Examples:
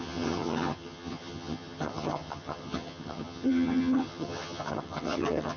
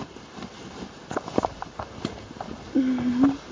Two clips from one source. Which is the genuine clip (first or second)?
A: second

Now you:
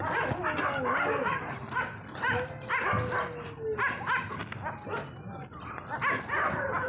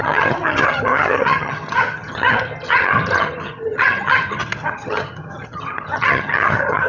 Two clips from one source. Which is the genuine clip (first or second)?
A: first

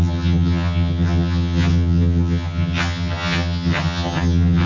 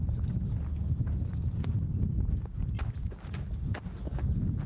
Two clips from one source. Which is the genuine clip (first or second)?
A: second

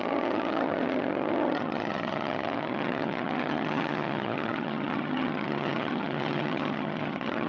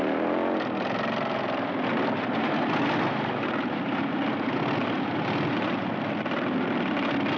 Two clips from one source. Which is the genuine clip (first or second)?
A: second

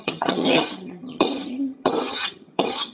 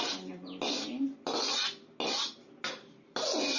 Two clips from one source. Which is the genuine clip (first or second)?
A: second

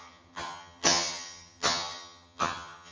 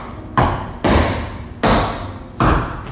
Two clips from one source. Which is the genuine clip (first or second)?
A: second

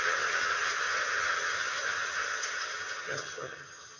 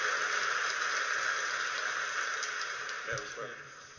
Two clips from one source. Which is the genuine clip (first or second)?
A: second